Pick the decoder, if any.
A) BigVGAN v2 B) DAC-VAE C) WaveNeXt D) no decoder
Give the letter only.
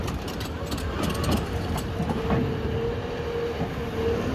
D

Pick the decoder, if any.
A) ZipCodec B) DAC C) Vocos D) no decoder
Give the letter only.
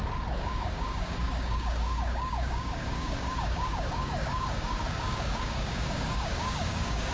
B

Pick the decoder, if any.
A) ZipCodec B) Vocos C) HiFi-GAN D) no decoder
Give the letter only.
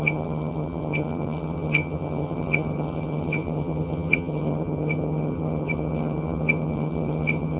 C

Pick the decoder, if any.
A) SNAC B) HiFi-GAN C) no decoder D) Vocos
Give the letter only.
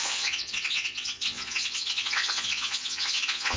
D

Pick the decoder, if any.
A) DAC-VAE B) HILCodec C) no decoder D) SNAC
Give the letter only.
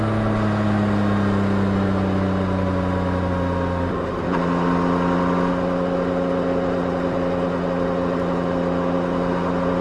C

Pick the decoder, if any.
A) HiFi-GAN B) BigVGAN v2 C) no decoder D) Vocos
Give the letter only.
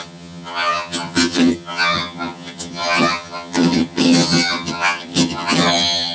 A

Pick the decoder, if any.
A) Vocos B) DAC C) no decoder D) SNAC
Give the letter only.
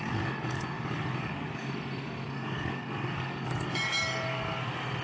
B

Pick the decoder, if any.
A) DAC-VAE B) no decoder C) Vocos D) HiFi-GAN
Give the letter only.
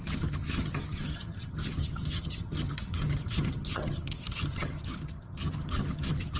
D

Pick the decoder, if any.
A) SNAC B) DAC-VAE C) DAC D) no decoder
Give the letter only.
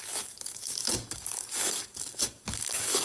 C